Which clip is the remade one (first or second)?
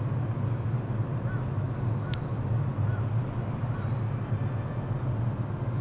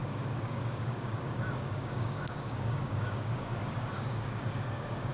second